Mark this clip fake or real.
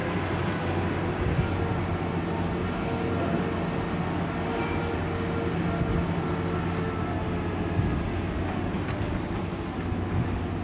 real